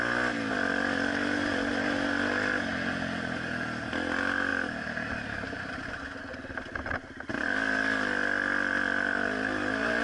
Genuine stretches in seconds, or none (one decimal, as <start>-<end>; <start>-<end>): 0.0-10.0